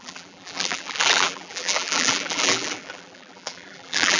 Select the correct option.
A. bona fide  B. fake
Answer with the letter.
B